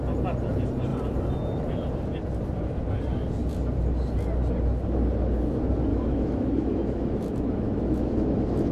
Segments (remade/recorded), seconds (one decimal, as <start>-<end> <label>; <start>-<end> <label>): 0.0-5.9 recorded; 5.9-8.7 remade